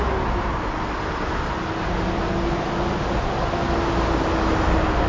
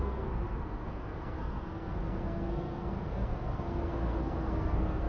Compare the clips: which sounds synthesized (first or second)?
second